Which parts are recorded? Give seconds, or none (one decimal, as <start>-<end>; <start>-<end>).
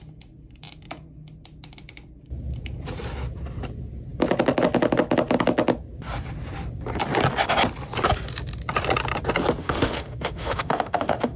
0.0-9.6